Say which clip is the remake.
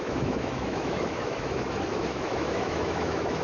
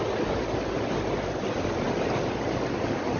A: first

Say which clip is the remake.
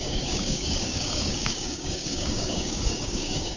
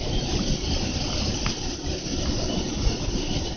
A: first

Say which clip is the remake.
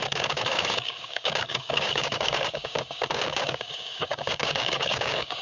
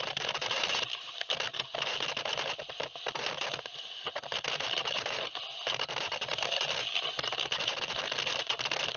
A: first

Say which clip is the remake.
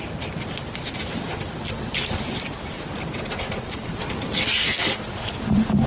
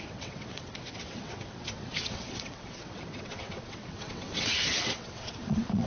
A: second